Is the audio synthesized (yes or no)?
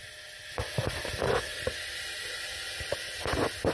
no